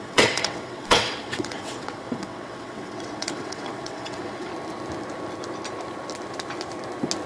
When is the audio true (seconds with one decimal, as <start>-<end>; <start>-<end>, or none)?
4.5-7.3